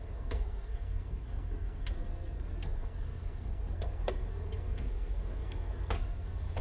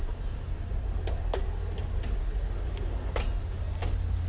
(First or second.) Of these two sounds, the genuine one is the second